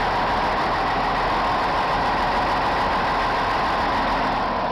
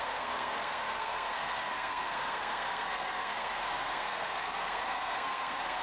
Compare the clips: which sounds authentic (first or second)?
first